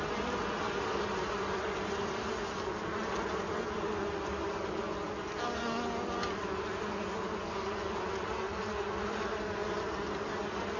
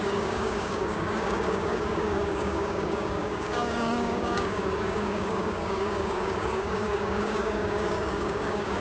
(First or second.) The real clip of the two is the first